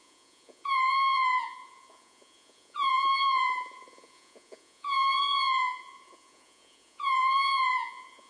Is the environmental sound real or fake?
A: fake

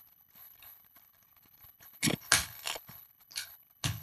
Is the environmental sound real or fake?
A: fake